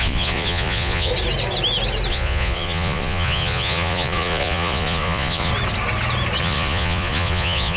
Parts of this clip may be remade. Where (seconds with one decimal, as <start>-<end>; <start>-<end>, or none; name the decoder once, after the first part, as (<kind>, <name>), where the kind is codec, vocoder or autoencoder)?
0.0-1.1 (vocoder, Vocos); 2.1-5.5; 6.4-7.8